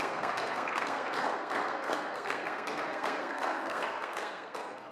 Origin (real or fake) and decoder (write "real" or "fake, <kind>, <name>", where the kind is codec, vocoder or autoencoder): fake, codec, SNAC